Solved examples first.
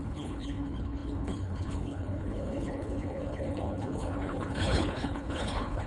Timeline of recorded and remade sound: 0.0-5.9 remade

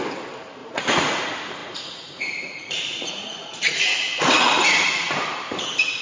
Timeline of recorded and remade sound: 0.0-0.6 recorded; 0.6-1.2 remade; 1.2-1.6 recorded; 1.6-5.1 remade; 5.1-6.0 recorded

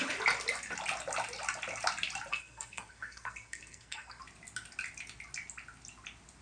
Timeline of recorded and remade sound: 0.0-2.3 recorded; 2.3-4.2 remade; 4.2-6.4 recorded

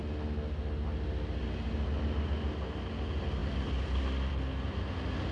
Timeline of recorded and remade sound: 0.0-5.3 recorded

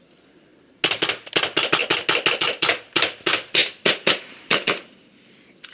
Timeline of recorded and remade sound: 0.0-0.5 remade; 0.5-1.2 recorded; 1.2-1.8 remade; 1.8-2.3 recorded; 2.3-5.7 remade